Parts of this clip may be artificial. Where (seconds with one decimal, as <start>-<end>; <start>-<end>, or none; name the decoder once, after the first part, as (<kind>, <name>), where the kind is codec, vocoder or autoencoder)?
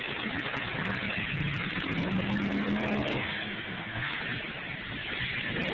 3.1-4.1 (autoencoder, DAC-VAE)